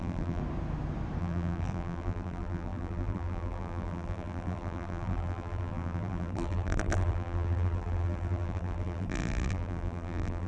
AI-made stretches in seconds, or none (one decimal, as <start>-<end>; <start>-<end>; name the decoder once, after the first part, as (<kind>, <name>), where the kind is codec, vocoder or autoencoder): 0.0-0.4 (vocoder, BigVGAN v2); 1.2-10.5

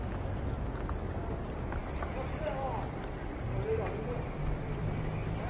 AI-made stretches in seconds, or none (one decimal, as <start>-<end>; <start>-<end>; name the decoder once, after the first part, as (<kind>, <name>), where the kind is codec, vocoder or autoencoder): 1.8-2.5 (vocoder, BigVGAN v2); 3.2-5.0

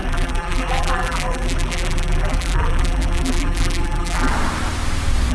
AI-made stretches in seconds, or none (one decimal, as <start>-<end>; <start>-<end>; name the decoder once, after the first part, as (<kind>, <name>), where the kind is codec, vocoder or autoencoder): 0.0-4.3 (vocoder, BigVGAN v2)

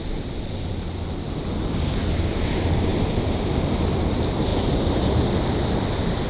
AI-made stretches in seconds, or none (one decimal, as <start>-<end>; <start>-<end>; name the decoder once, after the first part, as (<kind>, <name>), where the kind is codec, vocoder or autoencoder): 0.0-4.5 (vocoder, BigVGAN v2)

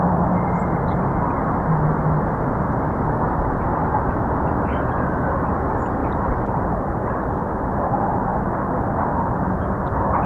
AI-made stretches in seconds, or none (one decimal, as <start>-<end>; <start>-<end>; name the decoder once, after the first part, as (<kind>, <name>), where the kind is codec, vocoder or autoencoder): 6.0-6.9 (vocoder, BigVGAN v2)

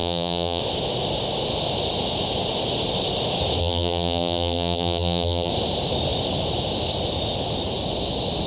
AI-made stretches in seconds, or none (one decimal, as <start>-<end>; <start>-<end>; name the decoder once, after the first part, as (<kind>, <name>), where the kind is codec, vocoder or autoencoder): 0.0-0.6 (vocoder, BigVGAN v2); 3.6-5.5

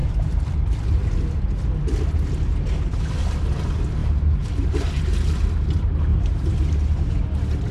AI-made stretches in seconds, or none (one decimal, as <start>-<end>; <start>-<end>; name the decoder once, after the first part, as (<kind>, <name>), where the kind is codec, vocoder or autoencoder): 0.0-1.1 (vocoder, BigVGAN v2); 4.0-5.0; 6.1-7.2

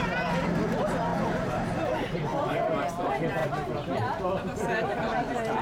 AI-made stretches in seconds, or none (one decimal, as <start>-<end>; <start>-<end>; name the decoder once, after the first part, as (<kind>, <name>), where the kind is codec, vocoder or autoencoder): 1.1-2.2 (vocoder, BigVGAN v2); 3.4-5.6